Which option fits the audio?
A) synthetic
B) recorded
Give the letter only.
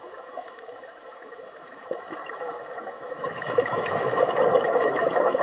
A